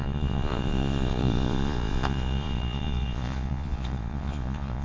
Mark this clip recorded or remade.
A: remade